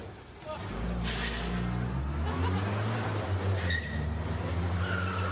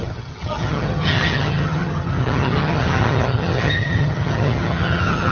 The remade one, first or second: second